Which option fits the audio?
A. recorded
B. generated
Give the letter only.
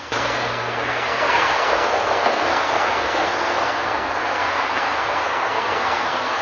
B